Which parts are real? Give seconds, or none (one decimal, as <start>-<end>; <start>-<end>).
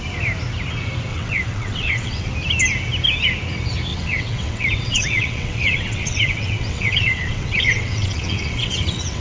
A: 0.0-1.1; 2.3-3.9